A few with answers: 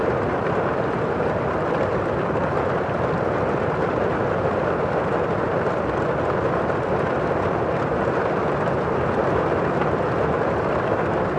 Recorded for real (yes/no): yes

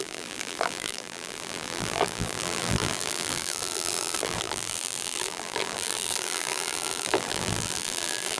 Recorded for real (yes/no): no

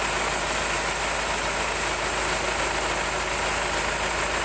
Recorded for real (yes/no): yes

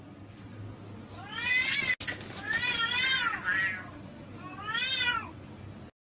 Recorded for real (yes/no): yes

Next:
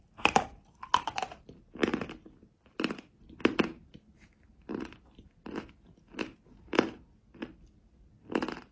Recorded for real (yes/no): yes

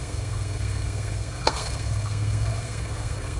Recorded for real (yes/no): no